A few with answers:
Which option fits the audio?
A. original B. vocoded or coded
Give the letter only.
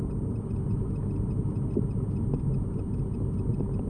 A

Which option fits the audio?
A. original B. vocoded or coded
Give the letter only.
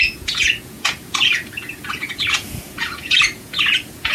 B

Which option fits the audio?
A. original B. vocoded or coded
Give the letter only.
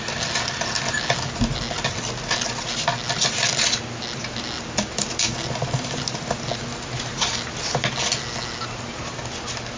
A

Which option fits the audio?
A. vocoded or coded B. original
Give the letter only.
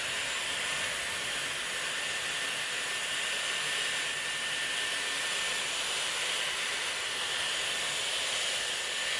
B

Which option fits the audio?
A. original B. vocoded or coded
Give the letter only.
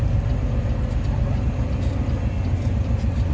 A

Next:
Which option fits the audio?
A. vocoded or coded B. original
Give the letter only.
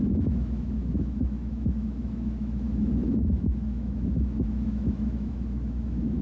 A